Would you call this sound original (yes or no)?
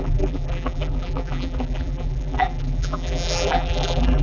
no